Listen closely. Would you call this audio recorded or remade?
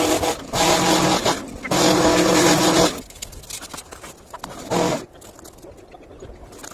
recorded